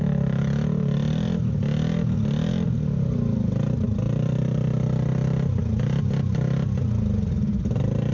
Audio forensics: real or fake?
real